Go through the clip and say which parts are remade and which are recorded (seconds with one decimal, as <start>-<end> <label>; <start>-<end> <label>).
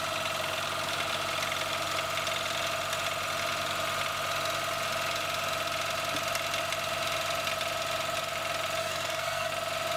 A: 0.0-8.8 recorded; 8.8-9.5 remade; 9.5-10.0 recorded